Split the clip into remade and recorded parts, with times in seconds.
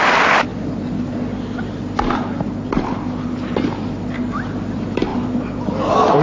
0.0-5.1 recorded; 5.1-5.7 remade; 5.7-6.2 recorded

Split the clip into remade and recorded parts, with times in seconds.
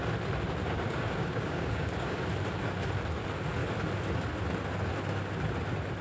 0.0-0.6 recorded; 0.6-2.2 remade; 2.2-6.0 recorded